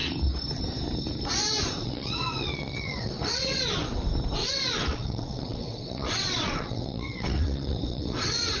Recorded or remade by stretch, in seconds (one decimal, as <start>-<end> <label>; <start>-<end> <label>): 0.0-1.8 recorded; 1.8-3.6 remade; 3.6-4.4 recorded; 4.4-8.6 remade